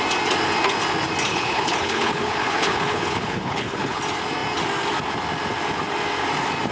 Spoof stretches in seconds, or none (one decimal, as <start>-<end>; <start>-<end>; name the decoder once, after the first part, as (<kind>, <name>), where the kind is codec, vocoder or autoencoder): 1.3-4.0 (codec, HILCodec)